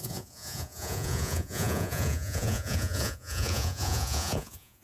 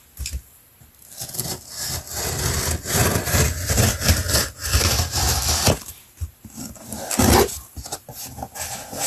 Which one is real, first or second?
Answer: second